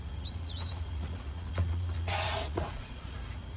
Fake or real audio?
fake